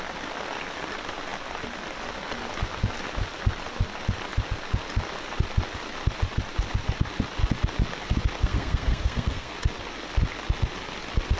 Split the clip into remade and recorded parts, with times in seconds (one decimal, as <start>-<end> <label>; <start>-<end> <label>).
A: 0.0-8.4 recorded; 8.4-9.5 remade; 9.5-11.4 recorded